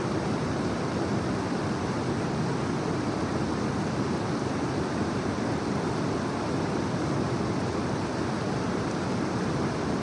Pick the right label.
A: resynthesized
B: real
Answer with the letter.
B